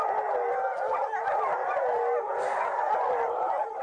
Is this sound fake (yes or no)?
no